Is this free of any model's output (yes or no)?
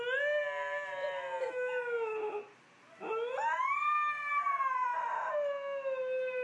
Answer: yes